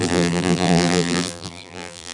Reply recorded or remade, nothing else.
remade